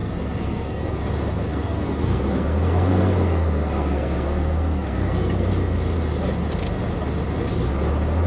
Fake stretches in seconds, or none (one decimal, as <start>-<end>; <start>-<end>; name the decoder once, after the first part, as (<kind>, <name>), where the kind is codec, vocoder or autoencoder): 0.0-1.0 (codec, SNAC); 1.5-5.5